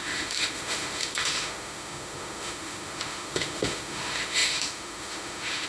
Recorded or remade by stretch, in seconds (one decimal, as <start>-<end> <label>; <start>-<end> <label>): 0.0-5.7 remade